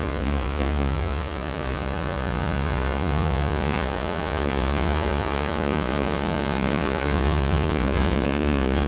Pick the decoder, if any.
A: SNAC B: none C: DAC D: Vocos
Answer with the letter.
D